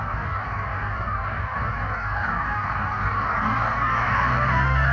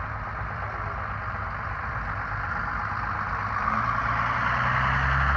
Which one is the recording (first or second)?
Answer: second